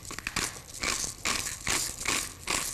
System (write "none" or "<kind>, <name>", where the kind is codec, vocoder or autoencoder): none